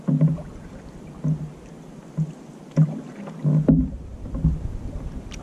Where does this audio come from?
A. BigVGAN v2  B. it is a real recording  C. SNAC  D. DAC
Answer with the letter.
B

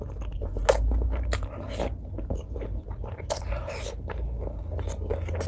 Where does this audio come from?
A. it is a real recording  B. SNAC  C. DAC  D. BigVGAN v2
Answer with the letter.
A